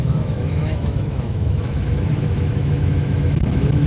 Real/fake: fake